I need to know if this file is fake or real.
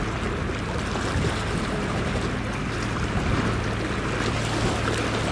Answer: real